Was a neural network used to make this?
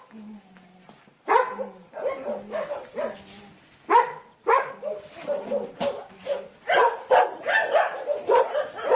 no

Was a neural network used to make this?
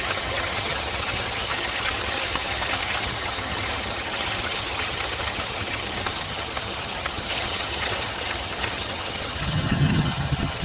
yes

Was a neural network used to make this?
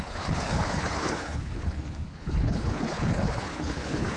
yes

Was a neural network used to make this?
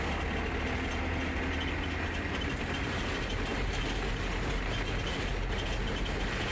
no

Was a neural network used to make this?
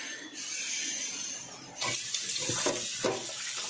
no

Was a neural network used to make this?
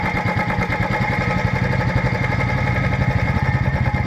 no